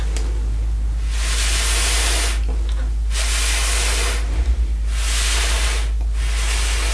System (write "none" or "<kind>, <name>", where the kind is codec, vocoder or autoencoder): none